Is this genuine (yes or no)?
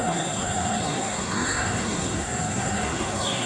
no